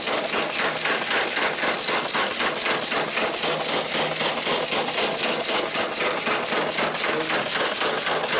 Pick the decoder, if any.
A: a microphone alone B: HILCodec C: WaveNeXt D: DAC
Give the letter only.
A